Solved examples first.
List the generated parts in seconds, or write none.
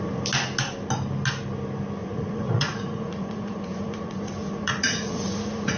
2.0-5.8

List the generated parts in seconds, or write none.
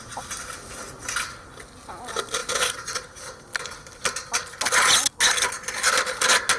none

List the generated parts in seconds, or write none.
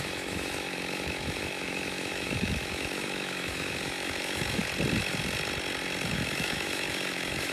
0.0-4.6; 6.1-7.5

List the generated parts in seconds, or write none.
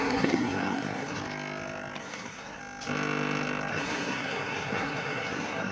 0.0-1.2; 2.0-2.6; 3.7-5.7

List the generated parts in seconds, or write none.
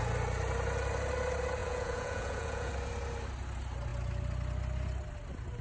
1.6-2.7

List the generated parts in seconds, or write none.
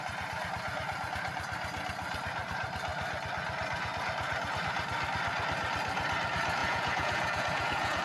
6.6-8.0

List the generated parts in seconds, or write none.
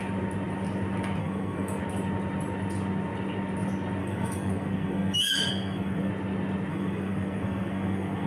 1.2-1.8; 4.0-6.1; 6.7-8.3